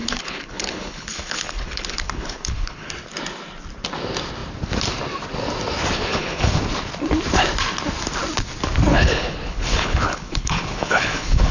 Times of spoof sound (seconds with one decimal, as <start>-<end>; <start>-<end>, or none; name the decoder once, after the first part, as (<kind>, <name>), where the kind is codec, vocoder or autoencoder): 0.0-2.9 (codec, HILCodec); 6.1-6.6; 8.9-11.5